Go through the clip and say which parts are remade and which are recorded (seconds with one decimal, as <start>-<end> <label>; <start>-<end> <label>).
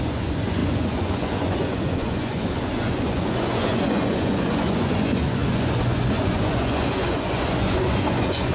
0.0-8.5 remade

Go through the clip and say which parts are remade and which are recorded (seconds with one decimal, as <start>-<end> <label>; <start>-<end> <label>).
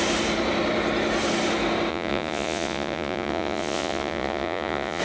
0.0-1.9 recorded; 1.9-5.0 remade